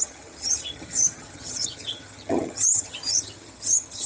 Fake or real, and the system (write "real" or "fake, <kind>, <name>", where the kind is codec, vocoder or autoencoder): fake, vocoder, HiFi-GAN